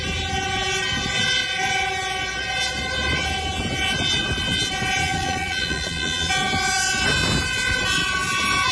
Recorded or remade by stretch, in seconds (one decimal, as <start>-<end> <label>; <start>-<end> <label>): 0.0-5.0 recorded; 5.0-6.3 remade; 6.3-8.7 recorded